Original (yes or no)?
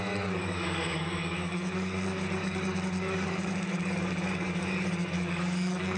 no